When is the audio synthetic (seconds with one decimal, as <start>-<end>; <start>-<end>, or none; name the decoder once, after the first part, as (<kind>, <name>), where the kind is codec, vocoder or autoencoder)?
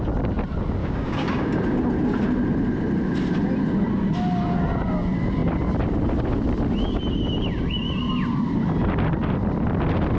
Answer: 0.8-1.6 (codec, DAC)